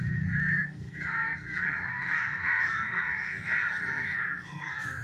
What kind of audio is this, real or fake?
fake